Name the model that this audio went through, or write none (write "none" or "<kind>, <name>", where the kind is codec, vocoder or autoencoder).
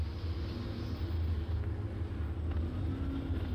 none